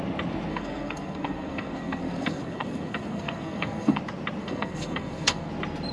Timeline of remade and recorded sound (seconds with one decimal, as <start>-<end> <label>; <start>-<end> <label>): 0.0-0.5 recorded; 0.5-4.0 remade; 4.0-4.4 recorded; 4.4-5.5 remade; 5.5-5.9 recorded